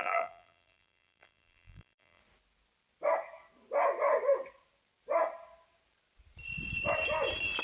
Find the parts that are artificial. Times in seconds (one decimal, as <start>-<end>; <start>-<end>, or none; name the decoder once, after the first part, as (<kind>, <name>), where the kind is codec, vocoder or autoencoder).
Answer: 0.0-2.2 (vocoder, BigVGAN v2)